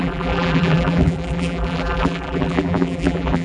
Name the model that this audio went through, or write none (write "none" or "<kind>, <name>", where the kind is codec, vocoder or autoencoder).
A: vocoder, BigVGAN v2